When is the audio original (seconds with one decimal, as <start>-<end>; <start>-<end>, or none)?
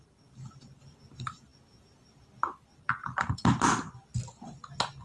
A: 0.0-5.0